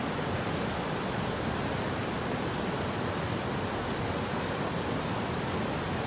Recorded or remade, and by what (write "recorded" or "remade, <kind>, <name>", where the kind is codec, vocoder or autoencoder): recorded